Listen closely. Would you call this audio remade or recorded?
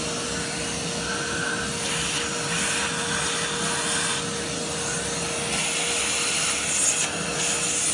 recorded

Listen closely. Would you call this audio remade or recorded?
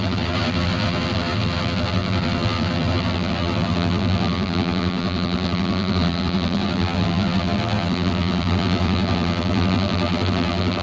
remade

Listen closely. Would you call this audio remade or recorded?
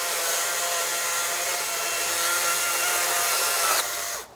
recorded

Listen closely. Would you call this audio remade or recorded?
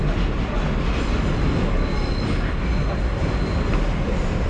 recorded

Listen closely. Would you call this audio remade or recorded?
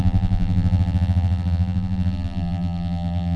remade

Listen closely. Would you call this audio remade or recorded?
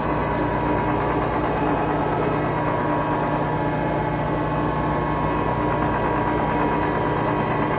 recorded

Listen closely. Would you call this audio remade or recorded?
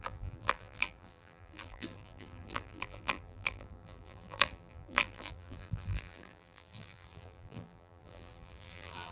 remade